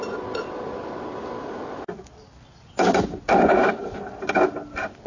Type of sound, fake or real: real